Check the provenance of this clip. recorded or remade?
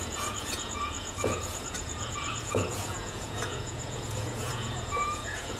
remade